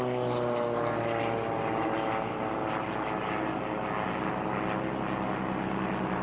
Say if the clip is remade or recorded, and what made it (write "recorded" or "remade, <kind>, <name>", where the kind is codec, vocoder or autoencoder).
recorded